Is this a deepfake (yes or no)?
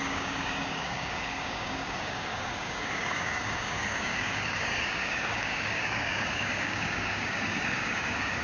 yes